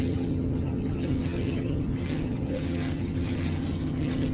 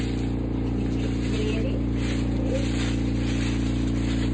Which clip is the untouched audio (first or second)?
second